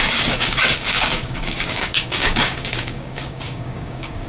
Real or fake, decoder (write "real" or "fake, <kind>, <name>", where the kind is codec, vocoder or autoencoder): fake, codec, DAC